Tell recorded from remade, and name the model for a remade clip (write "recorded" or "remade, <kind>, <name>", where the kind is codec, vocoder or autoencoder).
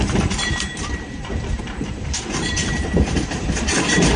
remade, vocoder, BigVGAN v2